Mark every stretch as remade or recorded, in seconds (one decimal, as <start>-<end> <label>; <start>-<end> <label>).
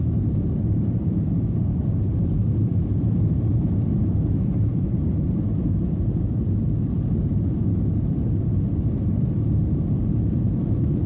0.0-11.1 remade